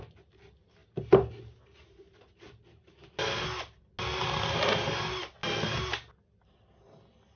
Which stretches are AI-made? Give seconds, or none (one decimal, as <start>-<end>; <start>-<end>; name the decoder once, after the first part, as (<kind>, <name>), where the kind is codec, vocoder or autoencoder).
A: none